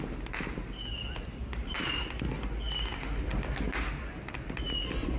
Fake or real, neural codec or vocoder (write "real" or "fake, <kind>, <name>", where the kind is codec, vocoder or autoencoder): real